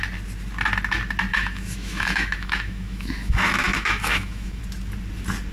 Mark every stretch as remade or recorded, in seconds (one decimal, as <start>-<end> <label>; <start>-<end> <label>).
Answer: 0.0-1.3 recorded; 1.3-4.6 remade; 4.6-5.5 recorded